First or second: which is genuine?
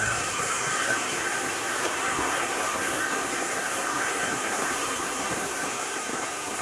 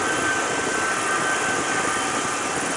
second